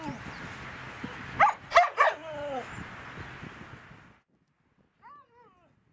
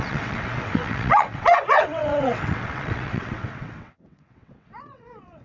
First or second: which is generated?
second